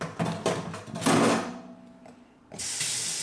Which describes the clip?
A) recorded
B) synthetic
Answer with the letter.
A